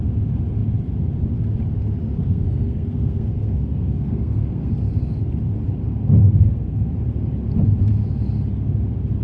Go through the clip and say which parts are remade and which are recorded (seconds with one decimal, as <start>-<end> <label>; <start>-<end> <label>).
0.0-2.2 recorded; 2.2-4.7 remade; 4.7-6.2 recorded; 6.2-6.9 remade; 6.9-9.2 recorded